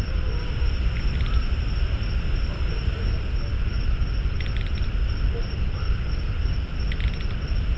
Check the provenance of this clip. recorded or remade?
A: recorded